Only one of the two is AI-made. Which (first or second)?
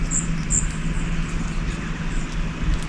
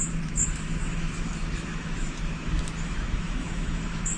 second